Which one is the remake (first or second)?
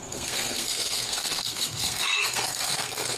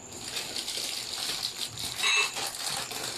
first